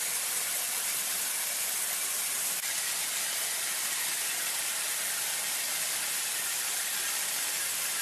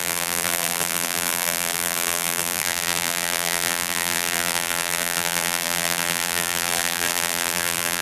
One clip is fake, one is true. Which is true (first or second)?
first